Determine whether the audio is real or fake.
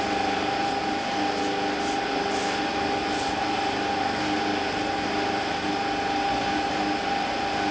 real